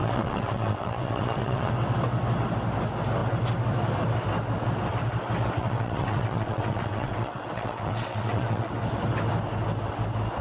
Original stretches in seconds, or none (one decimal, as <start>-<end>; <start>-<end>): 1.7-5.6; 8.7-10.4

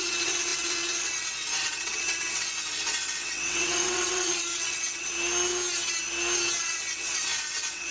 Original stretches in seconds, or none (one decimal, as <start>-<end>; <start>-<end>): 5.1-6.6

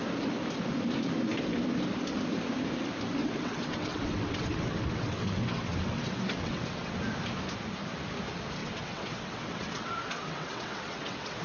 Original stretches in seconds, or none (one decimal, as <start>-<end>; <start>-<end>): 0.0-3.2; 7.0-8.6

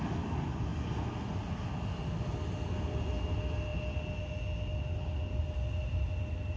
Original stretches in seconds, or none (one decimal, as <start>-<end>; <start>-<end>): 0.0-6.6

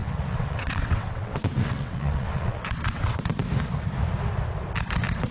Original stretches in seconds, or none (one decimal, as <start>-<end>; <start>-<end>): 3.2-5.3

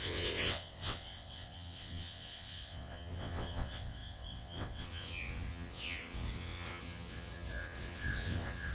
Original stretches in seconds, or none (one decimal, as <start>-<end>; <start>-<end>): none